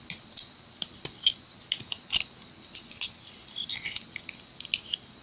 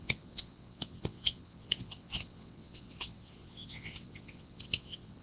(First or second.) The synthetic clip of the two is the second